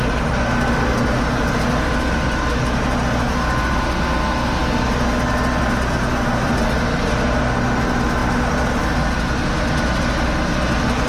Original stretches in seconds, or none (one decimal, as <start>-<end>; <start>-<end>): 0.0-11.1